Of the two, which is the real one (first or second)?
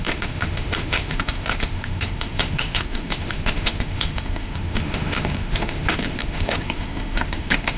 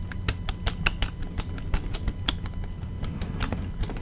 second